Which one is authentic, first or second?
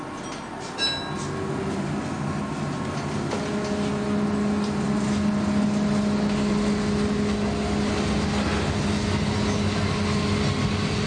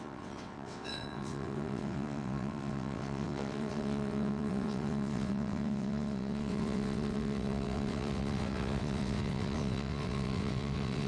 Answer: first